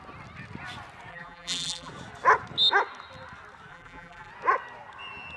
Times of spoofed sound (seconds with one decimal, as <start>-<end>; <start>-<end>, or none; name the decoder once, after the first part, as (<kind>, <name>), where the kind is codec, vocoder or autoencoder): 1.1-1.9 (vocoder, BigVGAN v2); 3.7-4.3